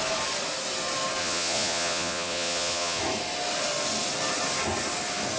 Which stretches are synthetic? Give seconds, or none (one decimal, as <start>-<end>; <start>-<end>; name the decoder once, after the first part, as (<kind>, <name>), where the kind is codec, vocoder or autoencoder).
1.2-3.0 (vocoder, Vocos)

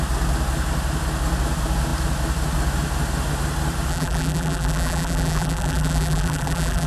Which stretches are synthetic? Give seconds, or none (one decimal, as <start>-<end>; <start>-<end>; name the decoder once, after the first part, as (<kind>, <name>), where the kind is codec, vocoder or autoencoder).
3.9-6.9 (vocoder, BigVGAN v2)

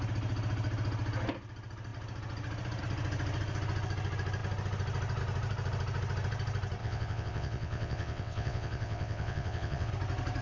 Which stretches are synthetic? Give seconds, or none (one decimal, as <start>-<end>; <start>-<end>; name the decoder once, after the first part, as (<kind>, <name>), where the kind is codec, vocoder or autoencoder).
6.8-9.9 (vocoder, WaveNeXt)